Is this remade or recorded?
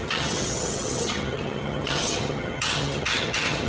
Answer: remade